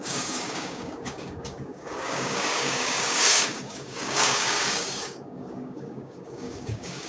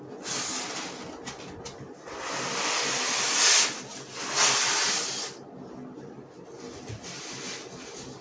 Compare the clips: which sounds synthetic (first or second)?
first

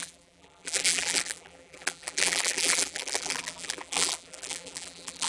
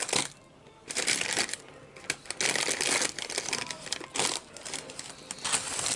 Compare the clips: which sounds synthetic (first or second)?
first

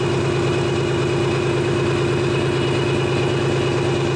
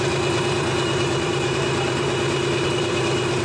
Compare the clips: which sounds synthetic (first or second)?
second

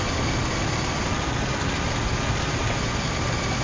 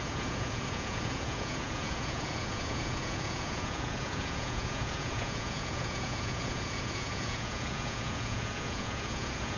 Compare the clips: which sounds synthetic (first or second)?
second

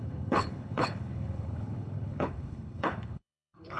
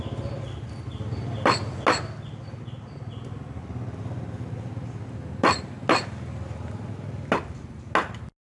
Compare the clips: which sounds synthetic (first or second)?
first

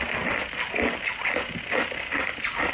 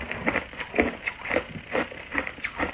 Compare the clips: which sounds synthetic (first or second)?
second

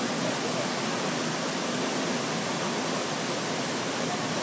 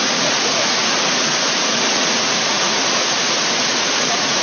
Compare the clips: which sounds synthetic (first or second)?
second